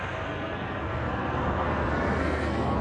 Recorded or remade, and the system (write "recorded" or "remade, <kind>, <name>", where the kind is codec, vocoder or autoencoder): remade, codec, SNAC